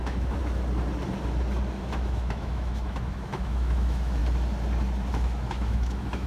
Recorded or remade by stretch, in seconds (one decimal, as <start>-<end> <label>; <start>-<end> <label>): 0.0-0.4 remade; 0.4-1.8 recorded; 1.8-4.2 remade; 4.2-5.1 recorded; 5.1-6.3 remade